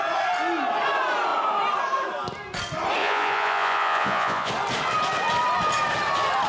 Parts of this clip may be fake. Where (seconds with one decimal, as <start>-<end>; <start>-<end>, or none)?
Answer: 3.0-4.5